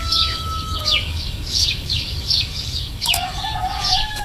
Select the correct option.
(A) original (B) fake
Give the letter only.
B